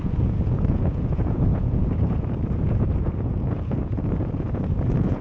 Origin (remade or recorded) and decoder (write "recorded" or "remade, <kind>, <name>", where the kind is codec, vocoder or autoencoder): remade, vocoder, Vocos